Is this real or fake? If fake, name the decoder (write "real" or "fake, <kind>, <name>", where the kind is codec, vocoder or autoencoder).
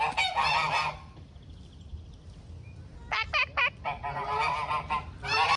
real